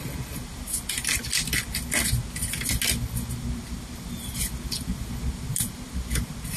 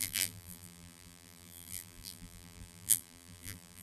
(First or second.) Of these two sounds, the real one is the first